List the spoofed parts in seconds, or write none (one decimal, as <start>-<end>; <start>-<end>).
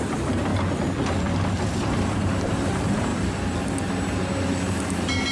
0.0-0.5; 1.6-3.1; 3.6-5.3